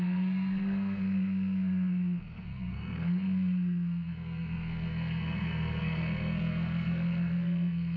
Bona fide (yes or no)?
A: no